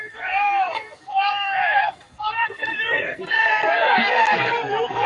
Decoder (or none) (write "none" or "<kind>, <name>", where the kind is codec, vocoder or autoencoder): codec, SNAC